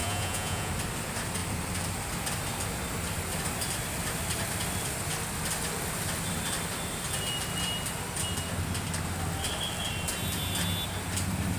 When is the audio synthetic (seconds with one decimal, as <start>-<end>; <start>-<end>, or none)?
0.0-0.7